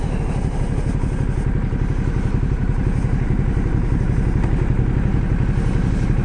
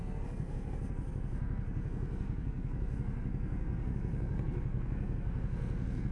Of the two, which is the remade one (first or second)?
second